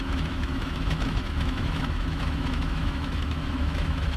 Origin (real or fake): fake